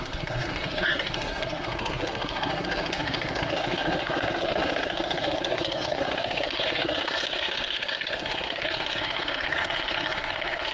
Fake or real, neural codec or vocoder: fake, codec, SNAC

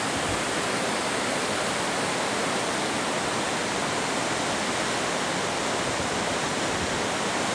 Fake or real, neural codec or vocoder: real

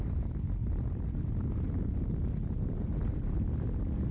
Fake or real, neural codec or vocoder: real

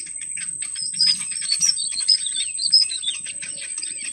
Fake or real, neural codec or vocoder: fake, vocoder, Vocos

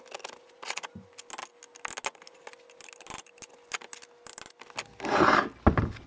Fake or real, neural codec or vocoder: real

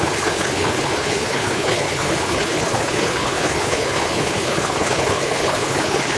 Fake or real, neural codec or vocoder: fake, codec, HILCodec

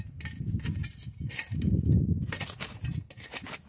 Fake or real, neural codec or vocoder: real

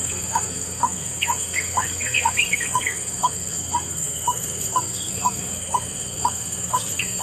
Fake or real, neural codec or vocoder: fake, codec, SNAC